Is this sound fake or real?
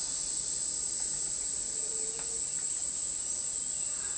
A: fake